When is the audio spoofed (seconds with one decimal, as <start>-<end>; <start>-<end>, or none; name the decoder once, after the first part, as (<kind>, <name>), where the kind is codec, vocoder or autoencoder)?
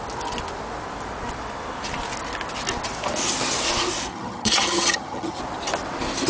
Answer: 4.1-5.4 (vocoder, HiFi-GAN)